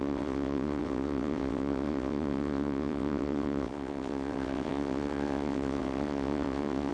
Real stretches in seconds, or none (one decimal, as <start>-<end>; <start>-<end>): none